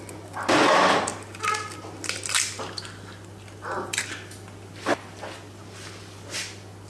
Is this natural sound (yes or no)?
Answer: yes